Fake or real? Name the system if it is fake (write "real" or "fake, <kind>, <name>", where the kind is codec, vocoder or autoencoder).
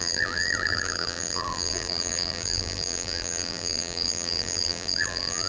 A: fake, vocoder, BigVGAN v2